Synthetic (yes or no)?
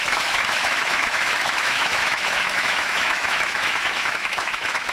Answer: yes